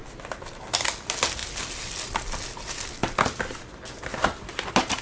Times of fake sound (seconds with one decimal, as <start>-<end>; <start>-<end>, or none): none